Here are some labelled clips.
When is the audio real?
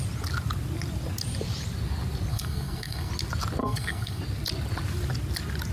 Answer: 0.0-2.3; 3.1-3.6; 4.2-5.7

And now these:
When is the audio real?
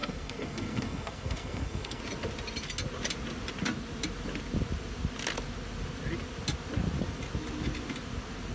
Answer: 2.0-8.5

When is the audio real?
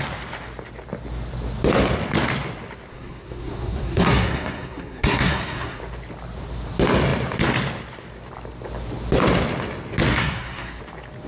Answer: 0.0-2.9; 5.8-10.1; 10.8-11.3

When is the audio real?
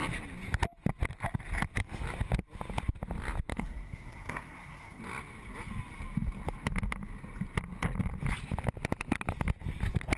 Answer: 0.0-3.5; 5.0-10.2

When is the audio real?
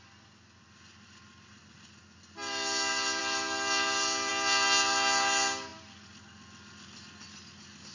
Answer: 0.0-7.9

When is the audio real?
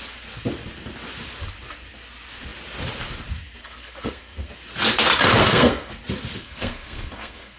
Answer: 0.0-3.6; 4.5-5.4; 5.9-6.4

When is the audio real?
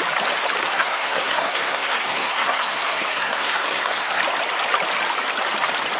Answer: 0.0-0.6; 4.2-6.0